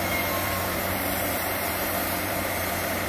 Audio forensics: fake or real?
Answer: fake